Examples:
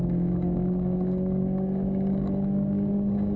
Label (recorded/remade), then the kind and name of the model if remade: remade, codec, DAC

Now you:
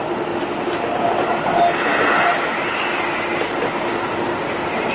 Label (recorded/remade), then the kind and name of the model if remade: recorded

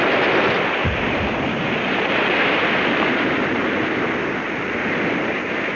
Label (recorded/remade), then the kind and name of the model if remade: recorded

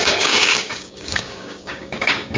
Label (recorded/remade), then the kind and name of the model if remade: remade, codec, DAC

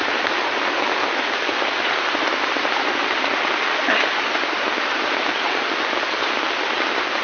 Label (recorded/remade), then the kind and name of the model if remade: recorded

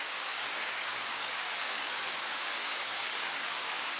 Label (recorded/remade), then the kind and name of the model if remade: remade, codec, DAC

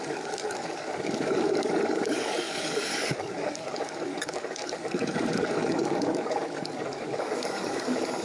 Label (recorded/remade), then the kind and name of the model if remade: remade, codec, DAC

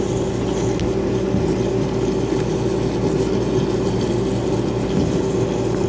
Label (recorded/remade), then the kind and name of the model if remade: recorded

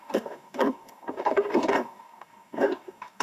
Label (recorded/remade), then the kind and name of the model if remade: remade, codec, DAC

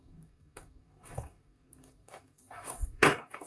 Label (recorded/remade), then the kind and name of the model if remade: remade, codec, DAC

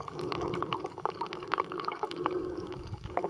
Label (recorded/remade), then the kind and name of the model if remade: remade, codec, DAC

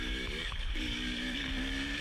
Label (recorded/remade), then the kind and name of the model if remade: remade, codec, DAC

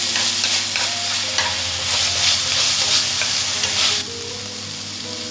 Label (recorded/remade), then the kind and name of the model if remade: recorded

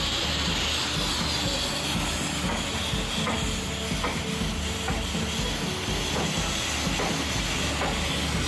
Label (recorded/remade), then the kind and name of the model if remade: recorded